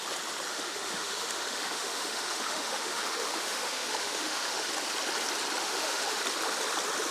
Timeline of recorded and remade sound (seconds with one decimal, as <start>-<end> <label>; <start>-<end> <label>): 0.0-0.5 recorded; 0.5-4.7 remade; 4.7-5.6 recorded; 5.6-6.2 remade; 6.2-7.1 recorded